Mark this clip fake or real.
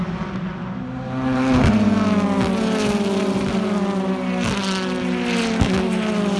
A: real